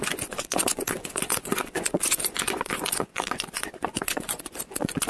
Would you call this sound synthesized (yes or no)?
yes